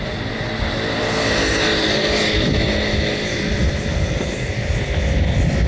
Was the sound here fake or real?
real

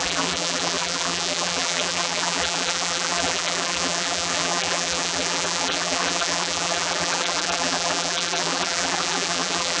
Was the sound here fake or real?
fake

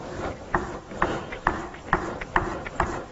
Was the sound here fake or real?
fake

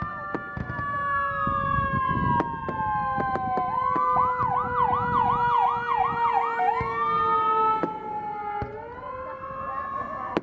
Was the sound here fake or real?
real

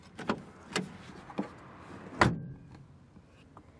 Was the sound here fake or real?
real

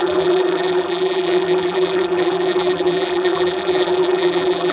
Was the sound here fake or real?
fake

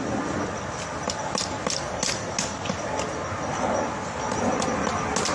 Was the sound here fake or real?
real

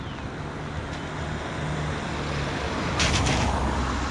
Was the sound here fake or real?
real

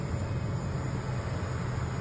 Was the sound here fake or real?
real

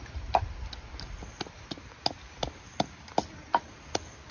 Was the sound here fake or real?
real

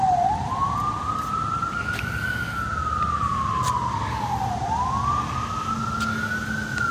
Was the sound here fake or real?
real